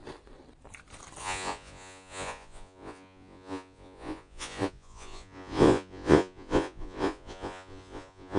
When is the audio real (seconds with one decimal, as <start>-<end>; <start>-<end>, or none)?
0.0-1.2